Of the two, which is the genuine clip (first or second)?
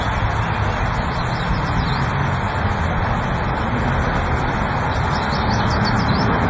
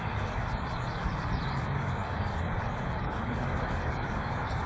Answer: first